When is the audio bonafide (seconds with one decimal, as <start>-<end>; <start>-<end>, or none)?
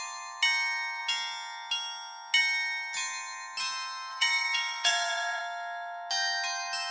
0.0-4.1; 5.4-6.9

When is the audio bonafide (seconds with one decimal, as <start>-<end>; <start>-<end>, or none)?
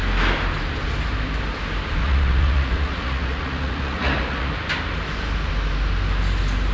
0.0-2.0; 4.5-6.7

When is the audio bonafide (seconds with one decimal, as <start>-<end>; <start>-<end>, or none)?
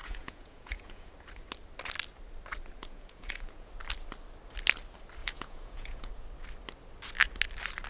1.1-2.8; 3.7-5.2; 6.1-7.9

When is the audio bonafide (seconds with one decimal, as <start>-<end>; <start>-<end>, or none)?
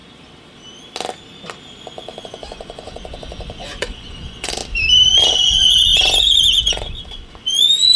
0.0-2.2; 4.6-5.3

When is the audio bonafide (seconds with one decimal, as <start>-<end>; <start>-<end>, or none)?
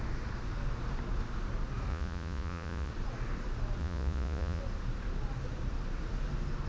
0.0-1.9; 2.9-3.8; 4.6-6.7